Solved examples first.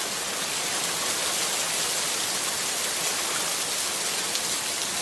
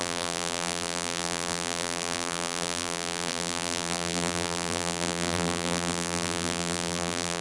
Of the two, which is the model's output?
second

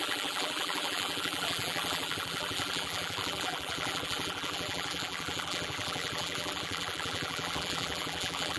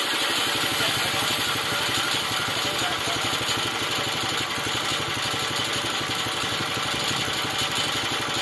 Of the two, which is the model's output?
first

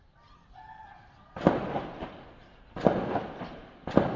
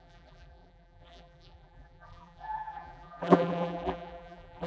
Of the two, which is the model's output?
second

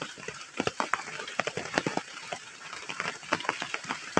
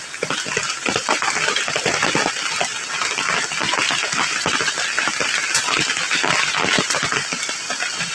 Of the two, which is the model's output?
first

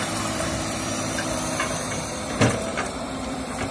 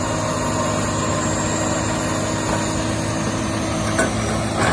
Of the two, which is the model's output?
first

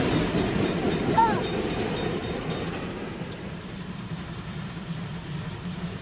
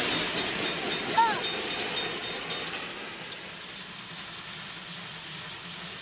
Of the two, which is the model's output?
first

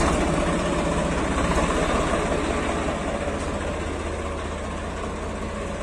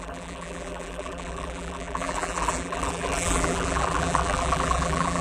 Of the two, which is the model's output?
second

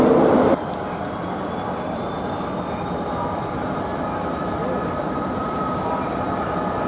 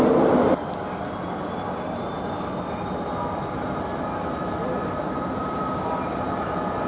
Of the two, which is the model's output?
first